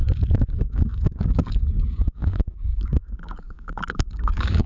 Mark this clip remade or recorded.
remade